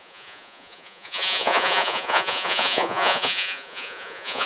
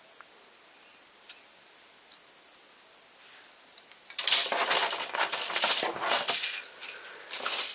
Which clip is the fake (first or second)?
first